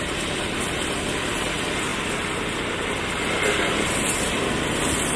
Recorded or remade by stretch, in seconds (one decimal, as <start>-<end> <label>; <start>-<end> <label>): 0.0-5.2 recorded